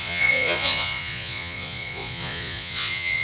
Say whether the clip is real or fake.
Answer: fake